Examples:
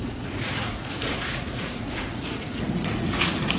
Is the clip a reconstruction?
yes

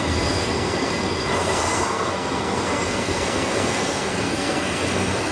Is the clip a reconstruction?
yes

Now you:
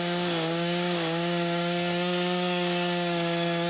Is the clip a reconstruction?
yes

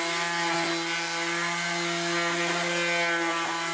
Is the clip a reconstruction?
no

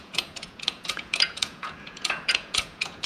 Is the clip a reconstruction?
yes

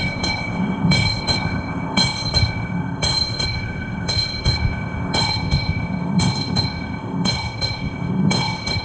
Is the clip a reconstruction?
yes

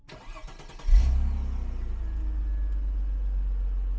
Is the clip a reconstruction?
no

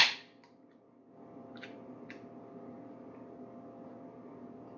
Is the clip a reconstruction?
no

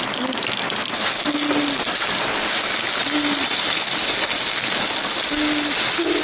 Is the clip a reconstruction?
no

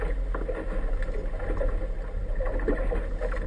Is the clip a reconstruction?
no